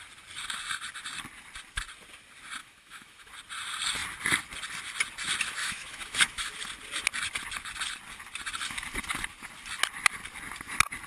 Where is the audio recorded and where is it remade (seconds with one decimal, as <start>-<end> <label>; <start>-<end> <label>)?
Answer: 0.0-2.6 recorded; 2.6-3.3 remade; 3.3-5.6 recorded; 5.6-6.5 remade; 6.5-11.1 recorded